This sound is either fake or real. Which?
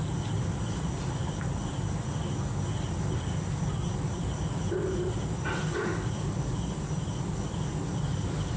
real